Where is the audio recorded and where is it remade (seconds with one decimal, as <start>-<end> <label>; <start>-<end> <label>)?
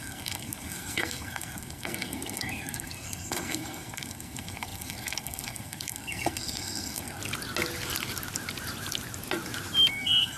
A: 0.0-7.2 remade; 7.2-9.9 recorded; 9.9-10.4 remade